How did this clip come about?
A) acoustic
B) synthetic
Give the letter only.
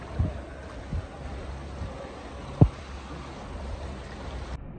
A